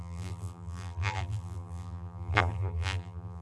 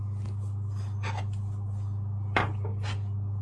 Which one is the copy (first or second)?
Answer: first